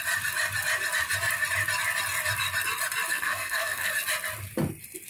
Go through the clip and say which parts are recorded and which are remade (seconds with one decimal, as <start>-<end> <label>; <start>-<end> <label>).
0.0-3.1 recorded; 3.1-3.9 remade; 3.9-5.1 recorded